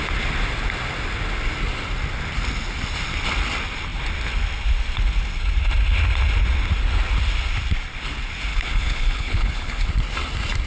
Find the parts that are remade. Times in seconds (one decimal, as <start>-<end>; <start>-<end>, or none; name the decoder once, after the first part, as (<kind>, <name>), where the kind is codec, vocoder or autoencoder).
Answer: 8.5-9.9 (codec, HILCodec)